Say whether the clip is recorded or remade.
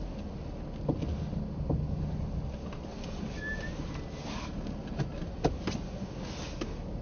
recorded